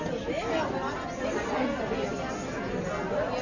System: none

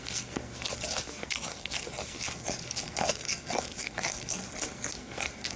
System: codec, SNAC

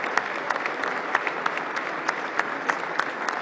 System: none